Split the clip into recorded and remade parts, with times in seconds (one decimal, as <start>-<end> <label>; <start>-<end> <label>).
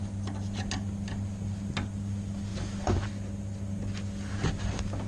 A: 0.0-2.5 recorded; 2.5-3.1 remade; 3.1-5.1 recorded